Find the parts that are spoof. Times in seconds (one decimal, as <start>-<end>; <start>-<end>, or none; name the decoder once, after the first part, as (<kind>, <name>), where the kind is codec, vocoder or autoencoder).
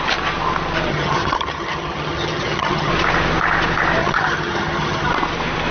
0.9-2.9 (vocoder, HiFi-GAN); 4.0-5.1